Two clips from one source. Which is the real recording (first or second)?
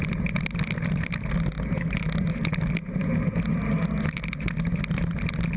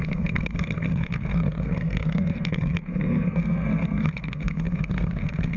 first